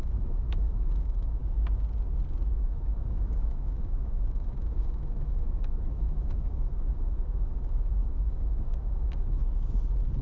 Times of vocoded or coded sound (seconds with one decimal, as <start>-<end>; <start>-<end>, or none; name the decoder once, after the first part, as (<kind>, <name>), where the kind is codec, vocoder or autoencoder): 0.0-1.4 (autoencoder, DAC-VAE); 2.5-9.4